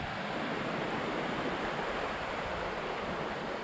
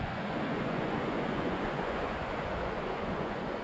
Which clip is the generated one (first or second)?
second